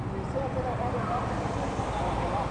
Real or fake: real